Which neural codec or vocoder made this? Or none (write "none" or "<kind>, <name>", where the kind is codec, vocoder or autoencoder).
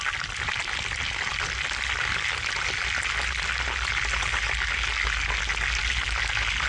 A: none